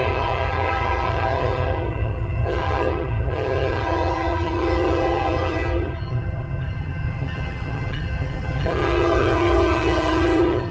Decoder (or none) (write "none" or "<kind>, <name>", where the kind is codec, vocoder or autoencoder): vocoder, HiFi-GAN